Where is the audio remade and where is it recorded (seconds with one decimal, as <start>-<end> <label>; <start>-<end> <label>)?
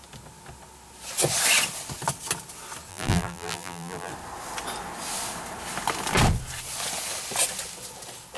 0.0-2.9 recorded; 2.9-4.1 remade; 4.1-8.4 recorded